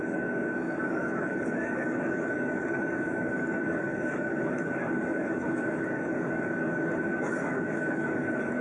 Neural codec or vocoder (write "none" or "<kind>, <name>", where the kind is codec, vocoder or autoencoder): codec, DAC